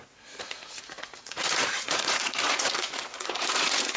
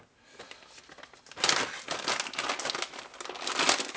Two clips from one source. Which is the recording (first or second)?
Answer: second